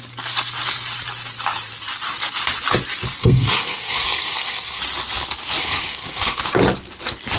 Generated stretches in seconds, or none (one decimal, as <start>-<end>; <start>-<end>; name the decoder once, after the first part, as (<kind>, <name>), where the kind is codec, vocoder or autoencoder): 3.2-4.8 (codec, SNAC); 5.6-6.4